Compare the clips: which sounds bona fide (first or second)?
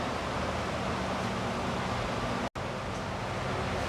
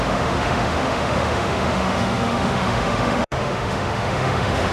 first